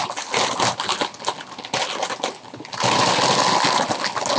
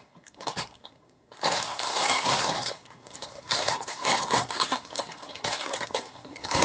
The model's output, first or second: second